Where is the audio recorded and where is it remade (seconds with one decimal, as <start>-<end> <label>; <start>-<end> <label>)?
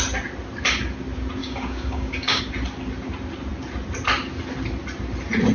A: 0.0-1.4 recorded; 1.4-2.4 remade; 2.4-5.5 recorded